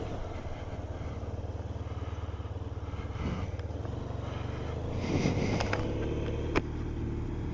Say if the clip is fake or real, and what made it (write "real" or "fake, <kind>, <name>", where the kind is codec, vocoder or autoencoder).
real